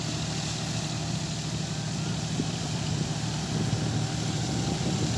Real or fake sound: real